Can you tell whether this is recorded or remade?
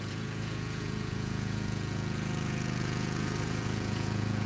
remade